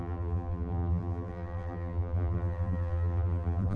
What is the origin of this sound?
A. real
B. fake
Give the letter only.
B